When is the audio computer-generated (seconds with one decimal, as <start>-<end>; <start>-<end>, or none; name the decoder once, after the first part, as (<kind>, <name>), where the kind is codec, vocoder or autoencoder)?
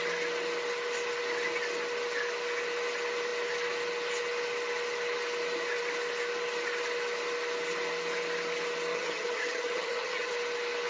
8.9-10.3 (vocoder, HiFi-GAN)